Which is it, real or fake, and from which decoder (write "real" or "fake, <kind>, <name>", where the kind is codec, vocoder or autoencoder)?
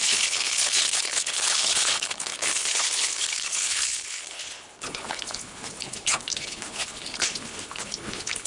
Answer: fake, codec, HILCodec